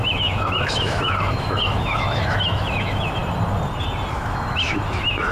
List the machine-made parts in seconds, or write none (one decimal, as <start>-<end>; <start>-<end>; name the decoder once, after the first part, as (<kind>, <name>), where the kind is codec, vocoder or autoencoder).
0.0-3.2 (autoencoder, DAC-VAE); 4.1-5.3